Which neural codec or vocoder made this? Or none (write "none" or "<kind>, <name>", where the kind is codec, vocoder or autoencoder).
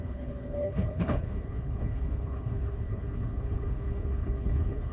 codec, HILCodec